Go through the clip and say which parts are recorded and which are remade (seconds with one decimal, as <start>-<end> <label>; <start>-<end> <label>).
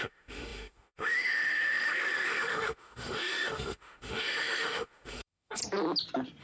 0.0-5.6 remade; 5.6-6.4 recorded